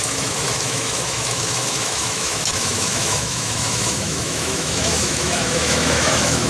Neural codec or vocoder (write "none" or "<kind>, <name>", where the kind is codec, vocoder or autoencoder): autoencoder, DAC-VAE